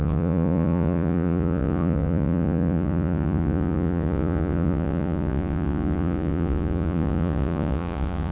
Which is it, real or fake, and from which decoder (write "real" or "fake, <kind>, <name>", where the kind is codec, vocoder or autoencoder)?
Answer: fake, vocoder, Vocos